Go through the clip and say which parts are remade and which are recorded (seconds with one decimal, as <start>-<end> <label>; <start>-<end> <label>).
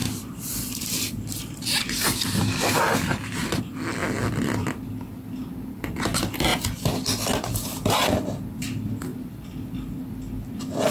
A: 0.0-3.6 remade; 3.6-4.0 recorded; 4.0-4.7 remade; 4.7-9.1 recorded; 9.1-9.9 remade; 9.9-10.9 recorded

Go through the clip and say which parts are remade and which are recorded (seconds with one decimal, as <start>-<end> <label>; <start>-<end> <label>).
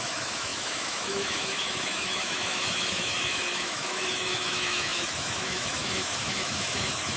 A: 0.0-7.2 remade